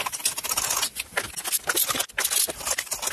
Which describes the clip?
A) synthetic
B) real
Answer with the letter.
B